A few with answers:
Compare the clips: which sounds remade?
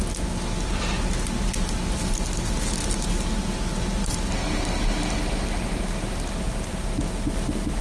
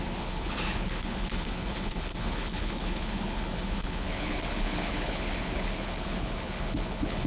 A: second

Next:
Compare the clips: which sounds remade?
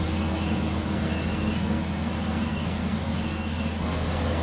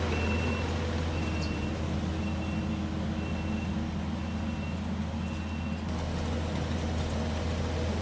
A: first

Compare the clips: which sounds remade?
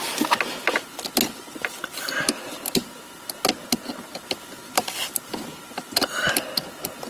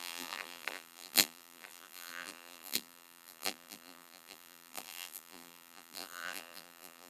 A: second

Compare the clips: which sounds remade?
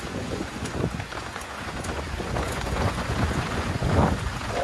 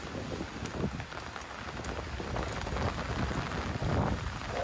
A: first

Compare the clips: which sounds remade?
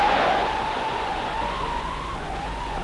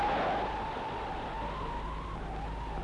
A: first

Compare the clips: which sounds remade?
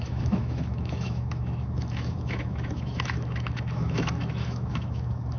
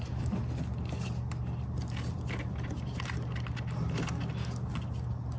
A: first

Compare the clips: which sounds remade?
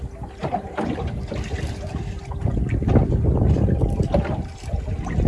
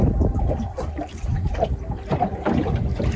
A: second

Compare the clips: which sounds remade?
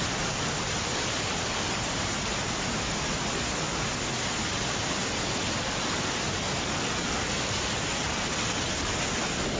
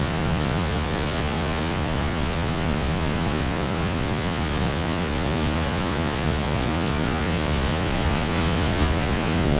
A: second